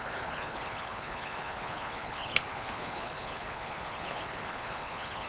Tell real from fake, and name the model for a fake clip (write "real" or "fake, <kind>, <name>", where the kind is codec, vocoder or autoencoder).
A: fake, codec, HILCodec